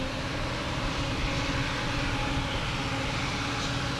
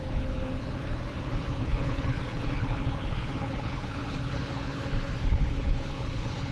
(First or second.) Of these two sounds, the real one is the first